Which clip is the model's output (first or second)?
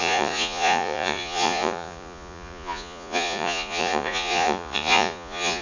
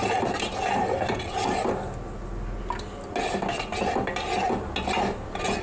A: first